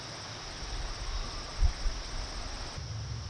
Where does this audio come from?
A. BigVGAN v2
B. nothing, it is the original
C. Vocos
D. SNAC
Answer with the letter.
B